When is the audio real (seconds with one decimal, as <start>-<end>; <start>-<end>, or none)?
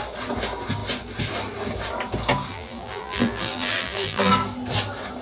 0.0-2.5; 4.3-5.2